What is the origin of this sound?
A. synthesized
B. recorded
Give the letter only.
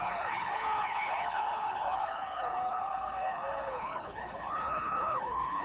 A